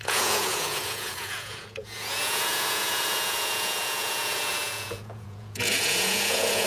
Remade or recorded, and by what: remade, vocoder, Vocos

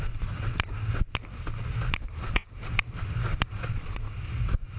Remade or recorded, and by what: recorded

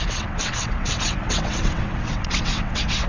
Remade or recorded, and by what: remade, vocoder, WaveNeXt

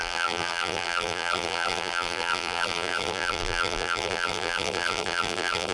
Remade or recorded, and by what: remade, vocoder, BigVGAN v2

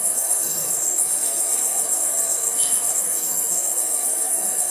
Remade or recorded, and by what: remade, codec, SNAC